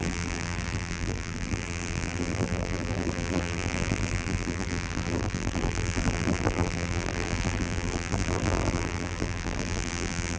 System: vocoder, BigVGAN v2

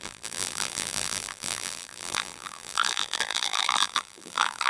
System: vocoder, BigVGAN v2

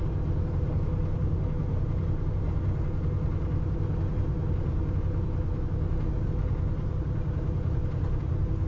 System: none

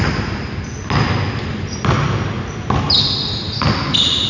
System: none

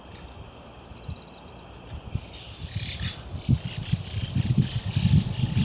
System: none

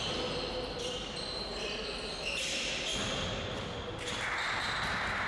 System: none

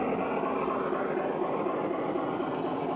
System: none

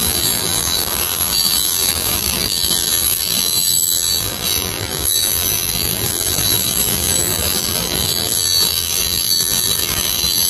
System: vocoder, BigVGAN v2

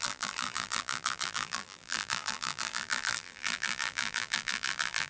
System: vocoder, BigVGAN v2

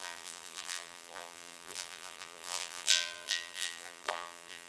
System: vocoder, BigVGAN v2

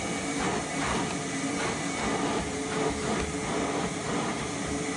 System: none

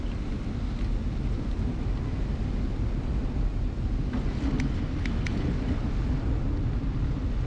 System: none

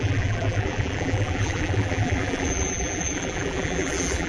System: vocoder, BigVGAN v2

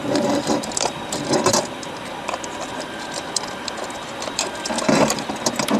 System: vocoder, BigVGAN v2